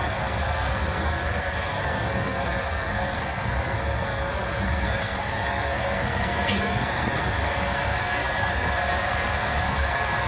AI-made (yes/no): yes